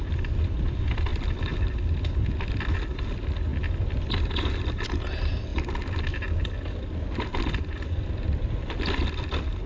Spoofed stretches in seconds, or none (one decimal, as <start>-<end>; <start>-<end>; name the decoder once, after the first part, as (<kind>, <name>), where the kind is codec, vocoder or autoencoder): none